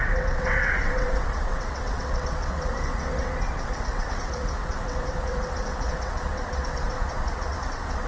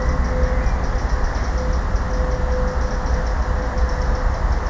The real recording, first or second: second